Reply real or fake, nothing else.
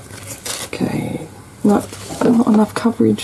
real